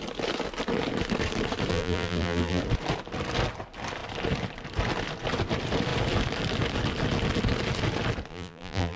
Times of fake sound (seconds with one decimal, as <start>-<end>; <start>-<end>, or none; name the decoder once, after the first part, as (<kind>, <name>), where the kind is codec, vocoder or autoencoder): 1.7-2.6 (vocoder, BigVGAN v2); 8.3-9.0